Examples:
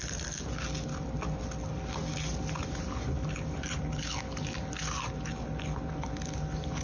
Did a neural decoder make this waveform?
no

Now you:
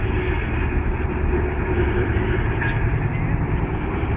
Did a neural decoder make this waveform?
no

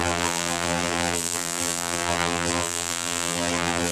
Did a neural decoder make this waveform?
yes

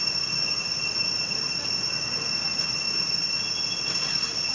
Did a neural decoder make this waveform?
no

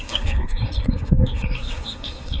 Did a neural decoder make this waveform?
yes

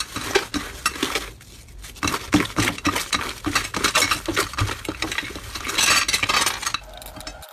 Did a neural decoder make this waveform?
no